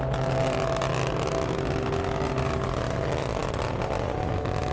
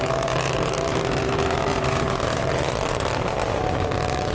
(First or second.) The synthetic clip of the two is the second